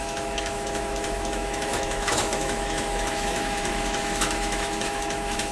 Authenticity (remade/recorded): remade